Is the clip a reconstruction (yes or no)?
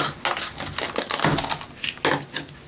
no